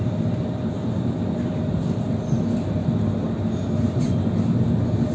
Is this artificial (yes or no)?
no